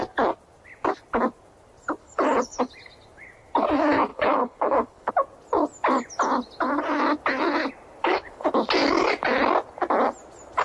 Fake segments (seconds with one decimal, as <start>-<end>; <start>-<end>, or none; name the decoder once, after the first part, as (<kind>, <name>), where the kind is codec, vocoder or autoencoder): 2.0-2.6 (codec, HILCodec); 4.1-5.1; 8.0-8.5